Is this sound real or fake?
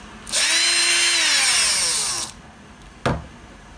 real